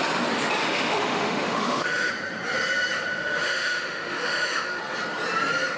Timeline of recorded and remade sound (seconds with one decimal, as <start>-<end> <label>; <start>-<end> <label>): 0.0-0.6 recorded; 0.6-2.1 remade; 2.1-3.2 recorded; 3.2-4.8 remade; 4.8-5.8 recorded